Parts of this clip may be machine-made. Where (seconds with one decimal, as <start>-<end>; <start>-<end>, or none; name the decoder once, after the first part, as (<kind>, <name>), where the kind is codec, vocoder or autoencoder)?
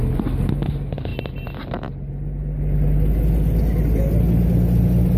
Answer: none